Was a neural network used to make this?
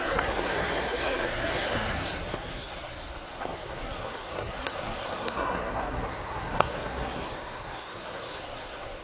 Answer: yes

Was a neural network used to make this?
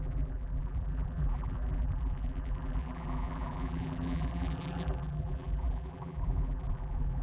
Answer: yes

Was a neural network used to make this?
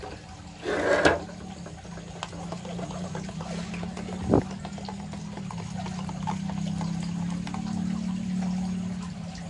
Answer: no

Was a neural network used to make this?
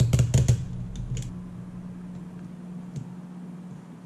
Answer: no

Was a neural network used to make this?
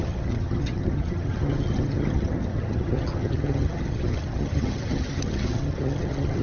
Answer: yes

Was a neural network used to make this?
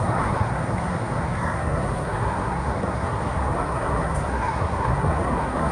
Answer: yes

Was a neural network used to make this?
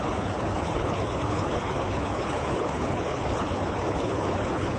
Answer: yes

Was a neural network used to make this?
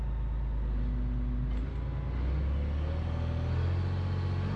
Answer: no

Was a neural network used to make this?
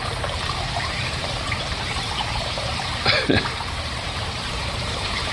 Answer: yes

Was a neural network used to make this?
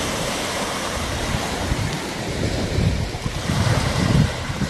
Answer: yes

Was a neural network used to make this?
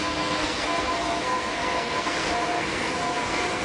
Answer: yes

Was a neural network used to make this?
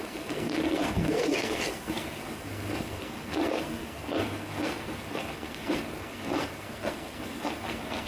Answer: yes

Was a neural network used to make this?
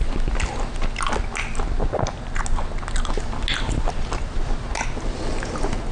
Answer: no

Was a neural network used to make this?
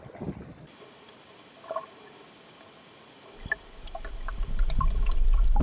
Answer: no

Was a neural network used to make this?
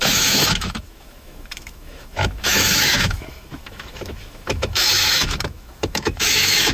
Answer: yes